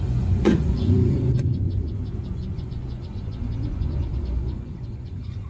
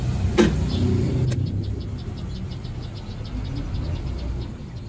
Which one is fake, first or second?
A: first